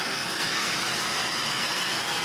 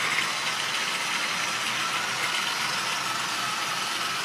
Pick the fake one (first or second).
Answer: first